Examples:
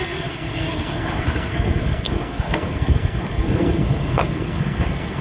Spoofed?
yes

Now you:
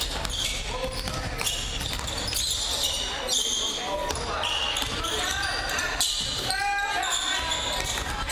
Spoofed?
no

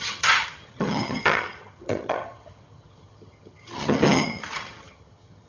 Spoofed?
yes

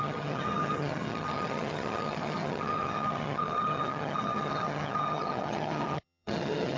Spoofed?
yes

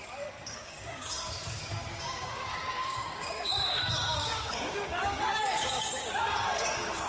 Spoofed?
yes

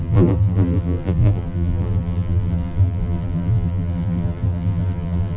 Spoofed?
yes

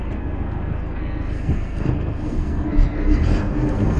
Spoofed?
yes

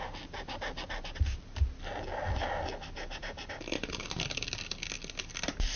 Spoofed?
no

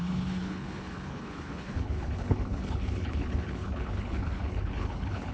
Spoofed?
yes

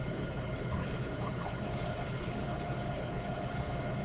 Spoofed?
yes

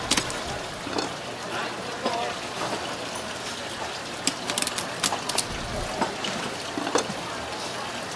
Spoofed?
no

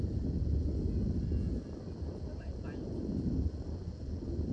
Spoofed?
no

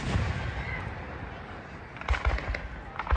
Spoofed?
no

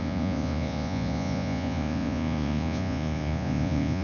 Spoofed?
yes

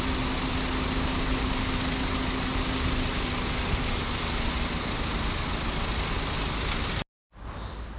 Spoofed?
no